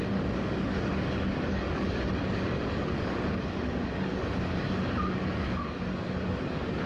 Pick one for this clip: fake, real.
fake